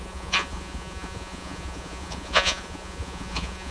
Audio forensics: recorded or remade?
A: remade